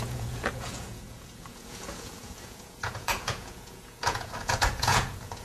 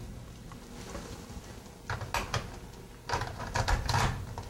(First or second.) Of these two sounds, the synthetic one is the first